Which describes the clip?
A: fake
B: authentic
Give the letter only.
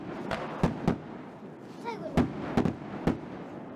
B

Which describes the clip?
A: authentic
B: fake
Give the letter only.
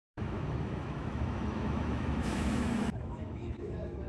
B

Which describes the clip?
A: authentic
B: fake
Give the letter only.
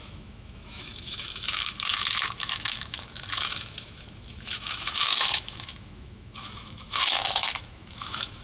B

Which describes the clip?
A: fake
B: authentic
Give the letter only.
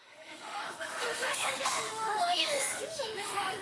A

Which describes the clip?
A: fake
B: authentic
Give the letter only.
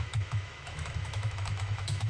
A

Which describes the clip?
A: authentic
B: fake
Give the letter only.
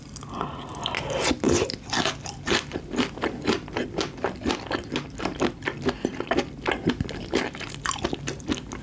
A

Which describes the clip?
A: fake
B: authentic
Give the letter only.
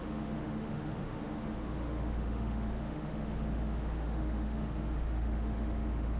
A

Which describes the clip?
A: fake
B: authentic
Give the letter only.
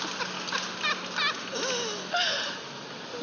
B